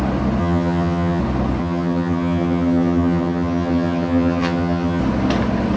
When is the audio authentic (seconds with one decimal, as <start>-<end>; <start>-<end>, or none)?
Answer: 0.0-0.4; 1.2-1.6; 5.0-5.8